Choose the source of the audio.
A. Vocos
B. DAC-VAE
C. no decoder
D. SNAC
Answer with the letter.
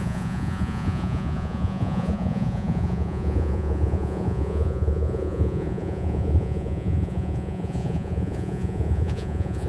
A